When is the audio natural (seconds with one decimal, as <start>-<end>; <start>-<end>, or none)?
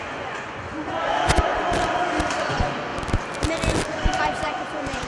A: 1.5-2.4; 2.9-4.2